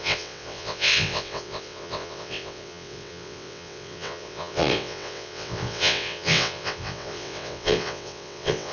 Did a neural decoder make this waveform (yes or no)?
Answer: yes